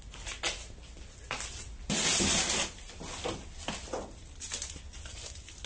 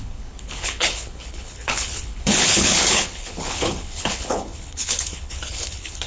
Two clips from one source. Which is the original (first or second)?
first